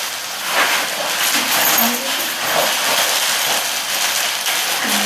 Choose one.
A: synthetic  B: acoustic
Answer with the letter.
B